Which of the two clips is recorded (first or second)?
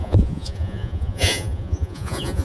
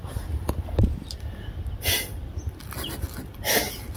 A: second